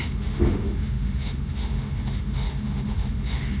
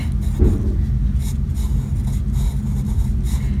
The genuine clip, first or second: second